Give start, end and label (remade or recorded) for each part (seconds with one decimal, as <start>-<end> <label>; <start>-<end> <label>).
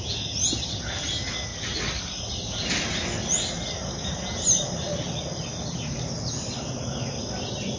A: 0.0-7.8 recorded